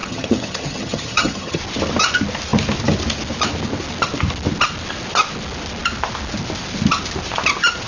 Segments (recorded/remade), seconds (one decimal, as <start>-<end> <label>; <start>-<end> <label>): 0.0-1.6 remade; 1.6-7.9 recorded